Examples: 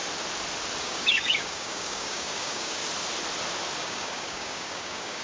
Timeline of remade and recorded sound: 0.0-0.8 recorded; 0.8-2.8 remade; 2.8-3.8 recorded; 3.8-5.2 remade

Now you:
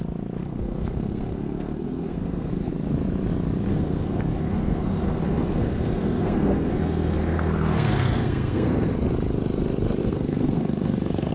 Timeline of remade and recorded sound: 0.0-0.4 recorded; 0.4-2.7 remade; 2.7-3.7 recorded; 3.7-8.9 remade; 8.9-10.0 recorded; 10.0-11.3 remade

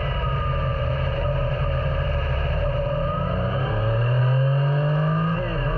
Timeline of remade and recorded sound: 0.0-0.7 recorded; 0.7-4.2 remade; 4.2-5.8 recorded